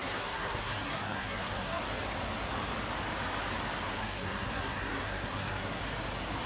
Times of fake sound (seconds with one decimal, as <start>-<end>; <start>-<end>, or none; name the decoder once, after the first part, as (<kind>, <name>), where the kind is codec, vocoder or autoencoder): 0.0-1.8 (codec, SNAC); 3.9-5.8